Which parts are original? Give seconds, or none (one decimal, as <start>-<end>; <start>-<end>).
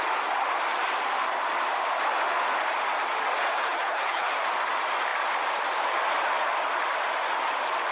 0.0-3.5; 4.3-7.9